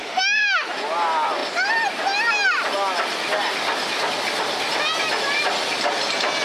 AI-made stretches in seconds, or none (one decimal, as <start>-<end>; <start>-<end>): 0.0-0.7